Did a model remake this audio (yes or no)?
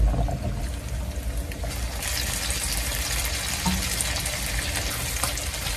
no